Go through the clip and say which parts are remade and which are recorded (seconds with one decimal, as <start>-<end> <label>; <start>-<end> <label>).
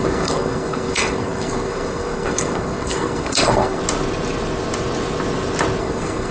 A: 0.0-3.8 remade; 3.8-5.8 recorded; 5.8-6.3 remade